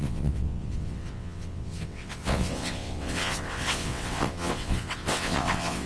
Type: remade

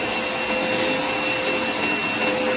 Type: recorded